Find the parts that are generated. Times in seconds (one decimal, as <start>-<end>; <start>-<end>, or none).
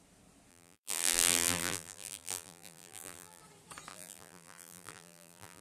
0.5-3.4; 3.9-5.6